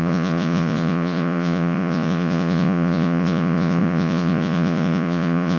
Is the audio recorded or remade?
remade